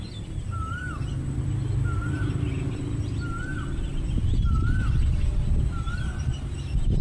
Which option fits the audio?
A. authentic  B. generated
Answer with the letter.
A